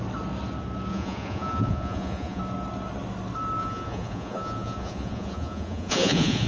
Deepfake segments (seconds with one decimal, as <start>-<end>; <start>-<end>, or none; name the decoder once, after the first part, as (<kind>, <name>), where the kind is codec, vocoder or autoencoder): 0.9-2.4 (vocoder, Vocos); 3.6-6.5